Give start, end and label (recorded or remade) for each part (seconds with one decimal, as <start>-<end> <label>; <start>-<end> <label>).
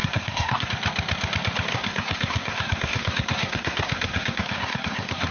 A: 0.0-0.7 remade; 0.7-1.7 recorded; 1.7-5.3 remade